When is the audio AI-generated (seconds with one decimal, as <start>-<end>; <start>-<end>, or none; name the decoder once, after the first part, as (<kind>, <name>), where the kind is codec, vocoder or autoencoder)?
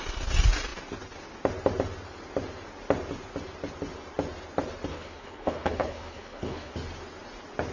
4.9-6.7 (codec, HILCodec)